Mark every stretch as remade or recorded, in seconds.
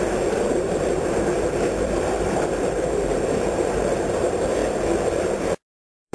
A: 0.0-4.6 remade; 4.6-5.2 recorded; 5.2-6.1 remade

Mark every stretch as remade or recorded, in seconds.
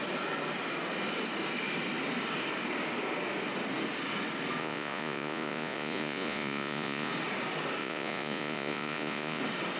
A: 0.0-4.6 recorded; 4.6-7.1 remade; 7.1-7.8 recorded; 7.8-9.4 remade; 9.4-9.8 recorded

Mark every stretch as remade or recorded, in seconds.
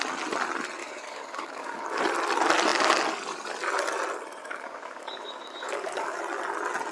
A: 0.0-0.8 recorded; 0.8-2.0 remade; 2.0-4.4 recorded; 4.4-6.2 remade; 6.2-6.9 recorded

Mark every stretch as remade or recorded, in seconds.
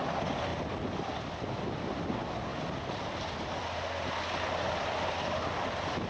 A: 0.0-6.1 recorded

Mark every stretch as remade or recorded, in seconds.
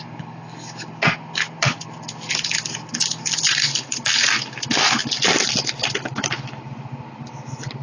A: 0.0-7.8 recorded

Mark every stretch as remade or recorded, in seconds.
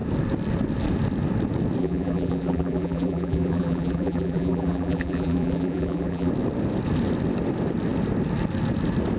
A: 0.0-1.8 recorded; 1.8-6.3 remade; 6.3-9.2 recorded